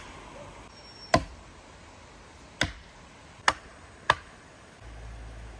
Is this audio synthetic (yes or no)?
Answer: no